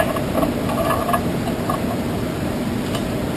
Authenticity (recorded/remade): recorded